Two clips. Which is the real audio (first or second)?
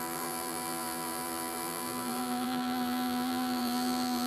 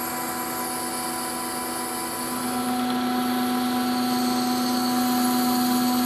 second